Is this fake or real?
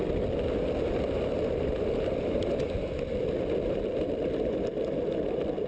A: real